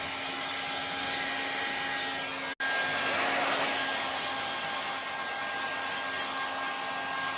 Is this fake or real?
real